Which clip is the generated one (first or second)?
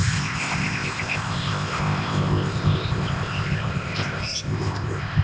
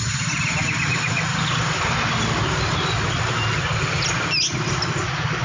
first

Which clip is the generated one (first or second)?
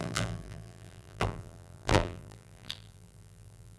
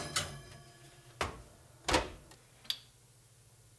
first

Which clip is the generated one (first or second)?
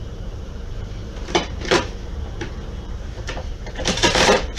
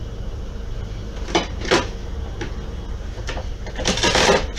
first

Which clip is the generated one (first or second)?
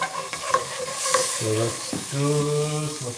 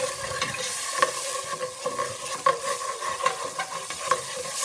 first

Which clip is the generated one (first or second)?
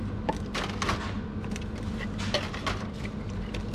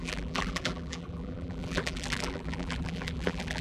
second